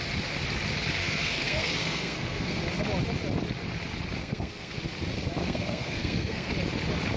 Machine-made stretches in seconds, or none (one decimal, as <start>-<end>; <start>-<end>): 1.0-2.6; 4.2-4.7; 5.4-6.5